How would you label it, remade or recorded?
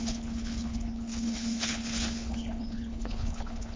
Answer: remade